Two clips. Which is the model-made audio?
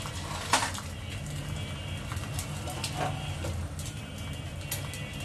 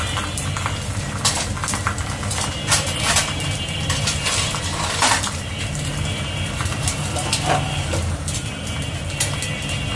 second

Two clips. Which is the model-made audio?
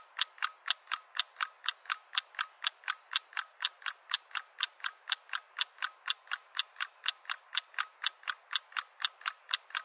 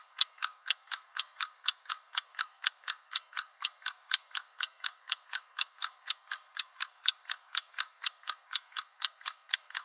second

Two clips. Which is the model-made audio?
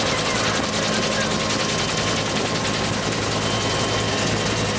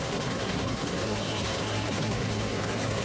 second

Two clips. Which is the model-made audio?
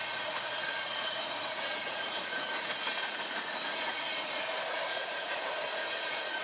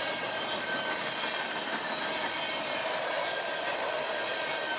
first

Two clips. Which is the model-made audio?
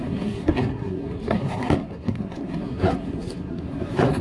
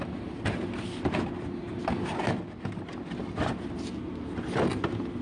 first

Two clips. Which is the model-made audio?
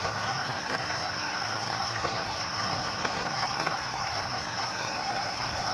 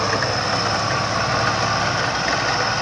first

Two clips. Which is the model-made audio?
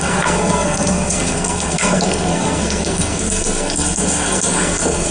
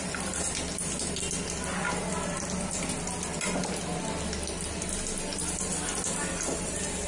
first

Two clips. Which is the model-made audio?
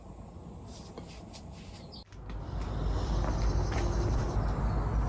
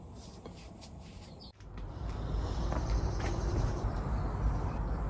second